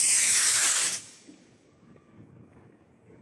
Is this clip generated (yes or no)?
yes